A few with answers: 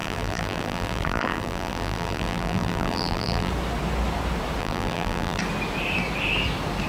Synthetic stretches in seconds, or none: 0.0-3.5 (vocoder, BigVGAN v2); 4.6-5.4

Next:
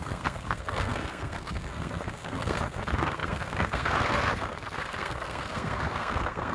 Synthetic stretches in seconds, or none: 0.0-6.5 (codec, SNAC)

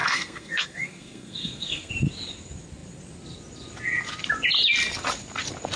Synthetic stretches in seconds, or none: 0.0-1.9 (codec, SNAC)

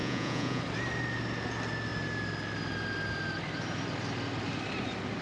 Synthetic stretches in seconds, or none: 0.0-0.6 (vocoder, Vocos)

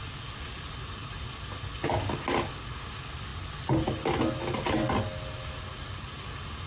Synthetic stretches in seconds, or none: none

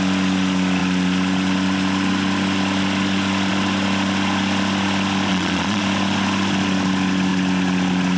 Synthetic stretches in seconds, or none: 5.3-5.8 (vocoder, Vocos)